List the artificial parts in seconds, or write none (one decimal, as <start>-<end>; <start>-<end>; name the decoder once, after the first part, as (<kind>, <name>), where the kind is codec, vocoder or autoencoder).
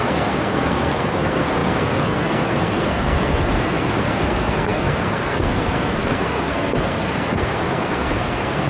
0.0-8.7 (codec, SNAC)